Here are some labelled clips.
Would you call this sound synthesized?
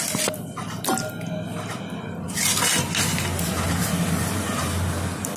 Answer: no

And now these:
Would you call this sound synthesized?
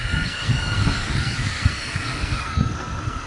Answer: yes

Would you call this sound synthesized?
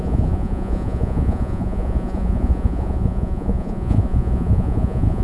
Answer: yes